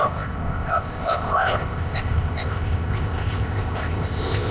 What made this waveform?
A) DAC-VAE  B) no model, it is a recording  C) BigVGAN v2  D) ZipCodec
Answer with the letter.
D